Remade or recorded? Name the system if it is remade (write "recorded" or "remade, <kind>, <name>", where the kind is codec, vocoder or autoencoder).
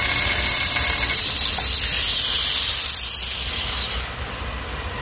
recorded